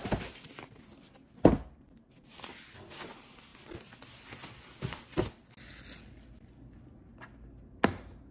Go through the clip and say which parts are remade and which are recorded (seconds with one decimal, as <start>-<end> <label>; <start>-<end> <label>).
0.0-8.3 recorded